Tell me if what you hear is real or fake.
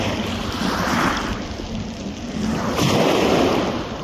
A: real